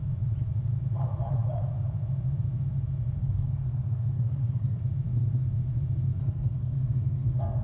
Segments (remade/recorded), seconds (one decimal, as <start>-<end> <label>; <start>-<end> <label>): 0.0-3.2 recorded; 3.2-4.8 remade; 4.8-6.2 recorded; 6.2-7.6 remade